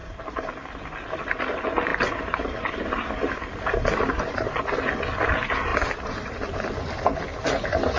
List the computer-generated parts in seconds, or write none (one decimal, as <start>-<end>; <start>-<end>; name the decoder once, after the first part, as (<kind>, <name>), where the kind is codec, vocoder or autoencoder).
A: 0.0-0.5 (vocoder, BigVGAN v2); 1.9-4.2; 5.7-6.3